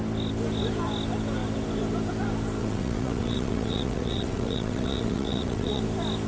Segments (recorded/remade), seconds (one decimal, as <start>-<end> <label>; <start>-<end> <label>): 0.0-2.6 recorded; 2.6-5.8 remade; 5.8-6.3 recorded